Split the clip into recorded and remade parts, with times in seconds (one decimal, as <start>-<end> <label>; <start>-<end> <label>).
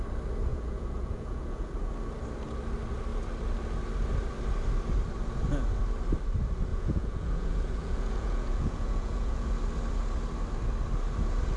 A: 0.0-0.5 recorded; 0.5-1.9 remade; 1.9-6.7 recorded; 6.7-9.5 remade; 9.5-11.6 recorded